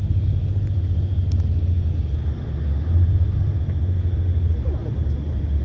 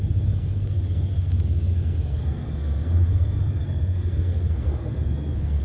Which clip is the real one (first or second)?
first